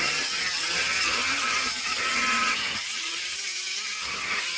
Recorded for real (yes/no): no